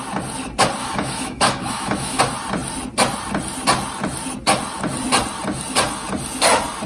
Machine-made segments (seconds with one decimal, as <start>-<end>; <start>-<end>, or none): 0.8-2.2